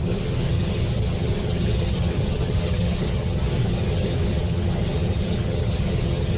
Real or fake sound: fake